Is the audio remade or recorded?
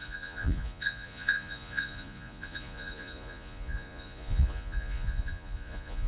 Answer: remade